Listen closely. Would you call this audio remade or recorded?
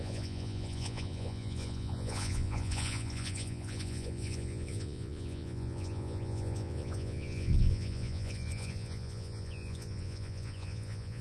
remade